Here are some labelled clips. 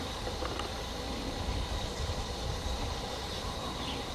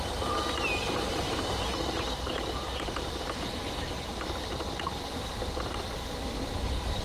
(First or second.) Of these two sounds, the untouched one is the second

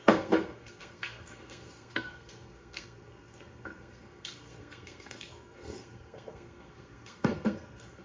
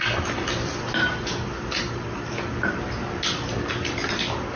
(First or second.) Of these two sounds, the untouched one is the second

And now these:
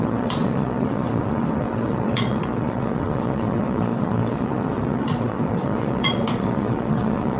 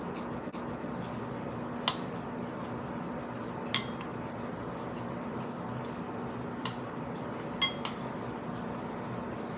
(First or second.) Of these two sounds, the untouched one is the second